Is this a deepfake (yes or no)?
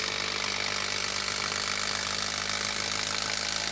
no